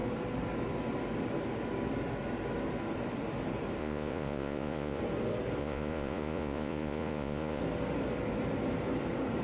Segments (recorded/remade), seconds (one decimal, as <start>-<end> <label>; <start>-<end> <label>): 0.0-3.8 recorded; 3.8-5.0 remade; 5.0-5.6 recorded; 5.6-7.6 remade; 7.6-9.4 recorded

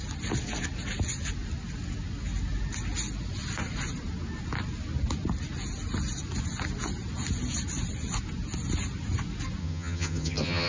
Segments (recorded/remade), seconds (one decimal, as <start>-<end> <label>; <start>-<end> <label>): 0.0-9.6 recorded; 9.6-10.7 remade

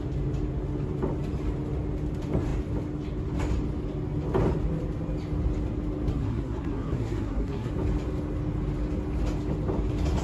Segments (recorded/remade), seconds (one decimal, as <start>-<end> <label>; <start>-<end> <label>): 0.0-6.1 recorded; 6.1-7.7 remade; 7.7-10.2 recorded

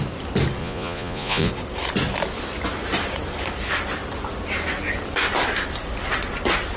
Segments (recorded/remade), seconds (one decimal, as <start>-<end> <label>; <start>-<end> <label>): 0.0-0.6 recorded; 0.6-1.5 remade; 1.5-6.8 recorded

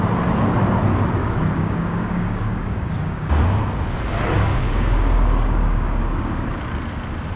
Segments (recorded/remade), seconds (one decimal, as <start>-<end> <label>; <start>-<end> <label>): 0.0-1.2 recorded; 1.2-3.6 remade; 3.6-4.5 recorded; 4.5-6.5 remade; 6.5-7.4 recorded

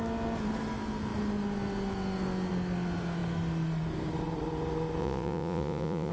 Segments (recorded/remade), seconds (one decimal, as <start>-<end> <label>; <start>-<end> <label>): 0.0-5.0 recorded; 5.0-6.1 remade